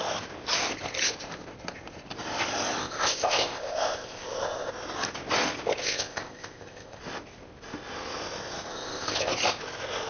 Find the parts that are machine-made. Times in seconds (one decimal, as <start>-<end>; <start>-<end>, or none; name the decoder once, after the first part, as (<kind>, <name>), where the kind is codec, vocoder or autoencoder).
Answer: 2.8-4.7 (codec, ZipCodec); 5.8-7.0; 8.7-9.3